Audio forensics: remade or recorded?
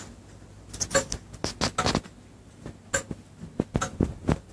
recorded